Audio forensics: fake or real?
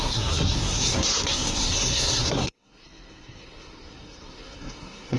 fake